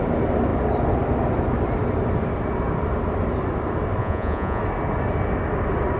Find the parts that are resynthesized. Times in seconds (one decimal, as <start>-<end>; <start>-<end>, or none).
4.0-4.6